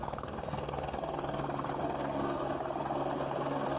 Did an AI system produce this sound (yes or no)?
yes